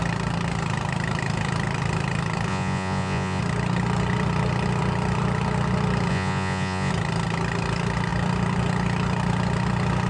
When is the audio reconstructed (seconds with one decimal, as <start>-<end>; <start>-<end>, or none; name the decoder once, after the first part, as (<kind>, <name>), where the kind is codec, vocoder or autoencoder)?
2.5-3.4 (vocoder, Vocos); 6.1-6.9